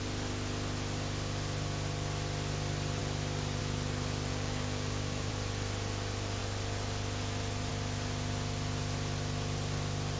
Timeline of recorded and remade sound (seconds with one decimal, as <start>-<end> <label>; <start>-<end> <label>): 0.0-4.3 recorded; 4.3-5.3 remade; 5.3-10.2 recorded